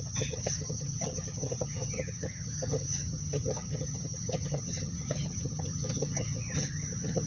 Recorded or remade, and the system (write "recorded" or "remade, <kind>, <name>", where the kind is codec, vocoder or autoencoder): remade, vocoder, HiFi-GAN